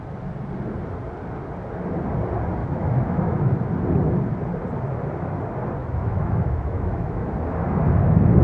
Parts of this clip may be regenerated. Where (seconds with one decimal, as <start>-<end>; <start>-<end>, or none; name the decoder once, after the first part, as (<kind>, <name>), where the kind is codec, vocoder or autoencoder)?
2.6-3.5 (autoencoder, DAC-VAE); 5.8-7.3